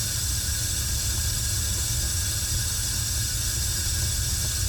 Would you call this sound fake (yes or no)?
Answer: no